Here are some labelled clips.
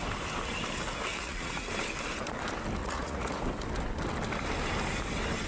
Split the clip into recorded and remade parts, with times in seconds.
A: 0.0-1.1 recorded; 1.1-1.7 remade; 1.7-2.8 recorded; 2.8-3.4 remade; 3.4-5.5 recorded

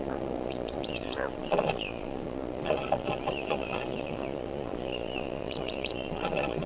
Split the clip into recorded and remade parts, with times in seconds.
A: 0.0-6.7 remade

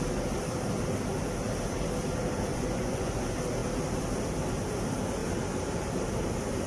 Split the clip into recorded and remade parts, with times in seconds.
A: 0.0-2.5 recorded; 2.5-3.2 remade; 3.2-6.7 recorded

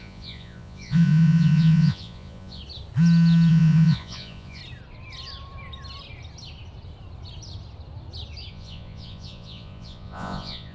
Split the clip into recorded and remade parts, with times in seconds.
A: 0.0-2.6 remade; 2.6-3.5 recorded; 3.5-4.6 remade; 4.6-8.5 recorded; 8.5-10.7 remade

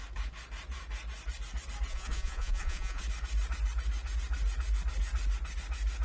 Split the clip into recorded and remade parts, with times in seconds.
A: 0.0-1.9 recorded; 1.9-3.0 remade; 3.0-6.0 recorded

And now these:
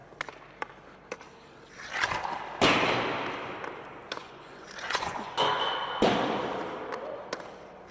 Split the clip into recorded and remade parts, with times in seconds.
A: 0.0-4.2 recorded; 4.2-5.8 remade; 5.8-7.9 recorded